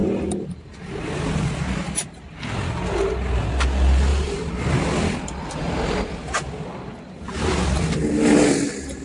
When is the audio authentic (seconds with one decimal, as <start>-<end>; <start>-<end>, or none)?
0.0-4.1; 4.7-9.0